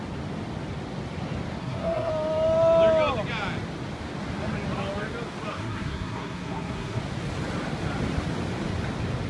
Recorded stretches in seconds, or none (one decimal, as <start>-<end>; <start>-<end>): 0.0-1.6; 2.1-5.5; 7.0-9.3